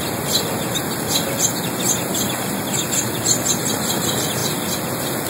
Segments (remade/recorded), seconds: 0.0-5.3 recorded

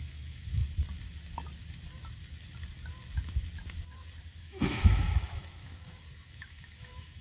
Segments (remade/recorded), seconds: 0.0-0.6 remade; 0.6-4.4 recorded; 4.4-7.2 remade

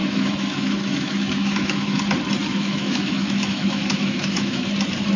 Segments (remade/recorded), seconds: 0.0-2.0 remade; 2.0-2.5 recorded; 2.5-4.7 remade; 4.7-5.2 recorded